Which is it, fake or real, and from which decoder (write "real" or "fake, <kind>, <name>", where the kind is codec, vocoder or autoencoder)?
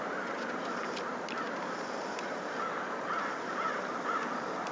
real